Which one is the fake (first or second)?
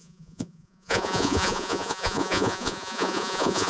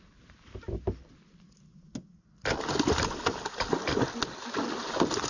first